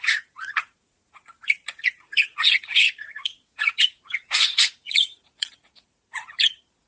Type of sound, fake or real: fake